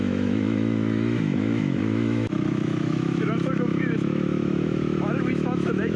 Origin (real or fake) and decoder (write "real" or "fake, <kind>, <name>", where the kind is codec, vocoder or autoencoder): fake, autoencoder, DAC-VAE